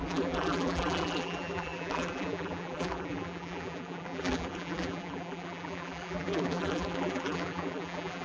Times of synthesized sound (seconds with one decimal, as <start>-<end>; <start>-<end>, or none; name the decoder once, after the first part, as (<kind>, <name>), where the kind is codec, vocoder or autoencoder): 0.0-8.2 (vocoder, BigVGAN v2)